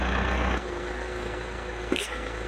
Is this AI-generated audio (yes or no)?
yes